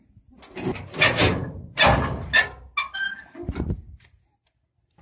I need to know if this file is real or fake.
real